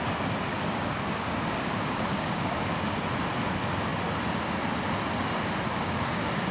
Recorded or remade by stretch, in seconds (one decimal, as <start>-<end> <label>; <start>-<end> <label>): 0.0-0.5 recorded; 0.5-2.7 remade; 2.7-5.7 recorded; 5.7-6.5 remade